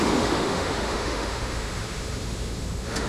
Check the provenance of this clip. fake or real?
fake